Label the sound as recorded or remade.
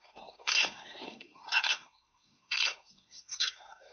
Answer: remade